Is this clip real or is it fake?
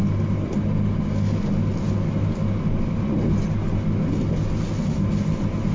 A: real